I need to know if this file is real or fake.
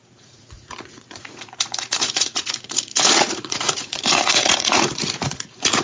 fake